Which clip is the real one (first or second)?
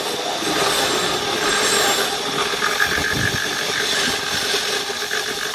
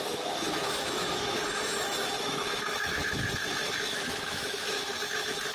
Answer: first